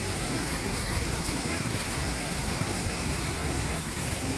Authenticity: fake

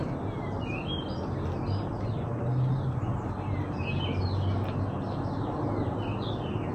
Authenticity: real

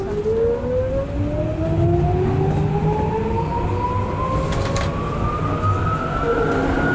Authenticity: real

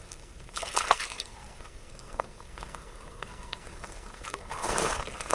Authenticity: fake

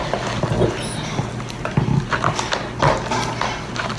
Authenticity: real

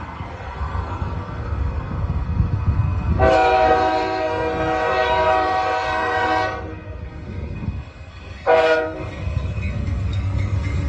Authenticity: fake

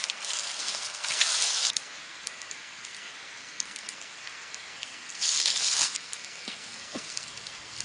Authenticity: fake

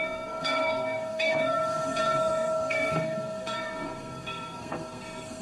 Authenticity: fake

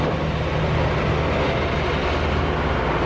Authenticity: real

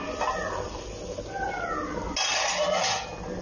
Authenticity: real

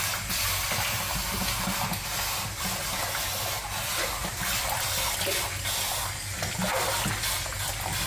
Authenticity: real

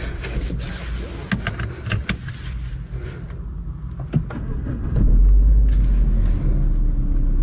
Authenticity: real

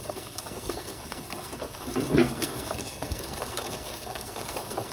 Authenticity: fake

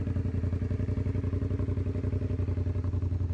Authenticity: real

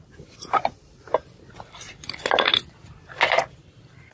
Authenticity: real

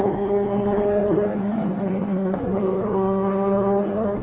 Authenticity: fake